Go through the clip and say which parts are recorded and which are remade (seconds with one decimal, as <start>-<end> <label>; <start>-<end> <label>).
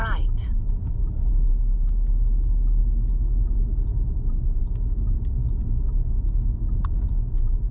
0.0-7.7 recorded